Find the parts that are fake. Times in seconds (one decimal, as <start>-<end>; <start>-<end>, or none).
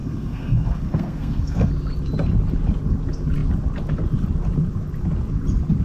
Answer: 0.0-1.7